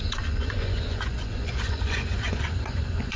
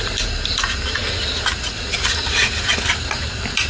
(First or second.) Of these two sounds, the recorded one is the second